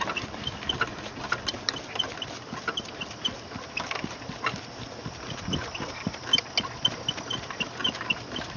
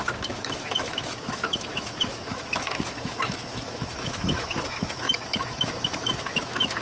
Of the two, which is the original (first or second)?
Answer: first